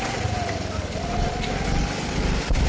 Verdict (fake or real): real